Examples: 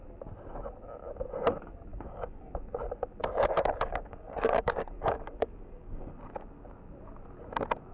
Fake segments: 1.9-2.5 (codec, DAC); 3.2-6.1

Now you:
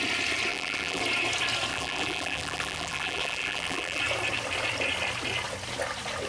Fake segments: 0.5-1.0 (vocoder, BigVGAN v2); 1.7-4.0

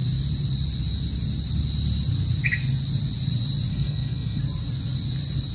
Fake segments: 3.7-4.4 (codec, SNAC)

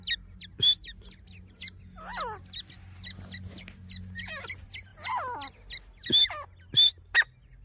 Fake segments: none

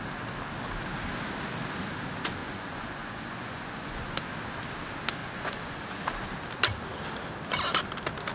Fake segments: 2.4-4.2 (vocoder, Vocos); 5.2-5.8